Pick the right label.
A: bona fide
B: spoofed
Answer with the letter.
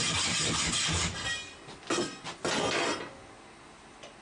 A